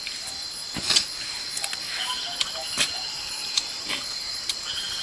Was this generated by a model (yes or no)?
no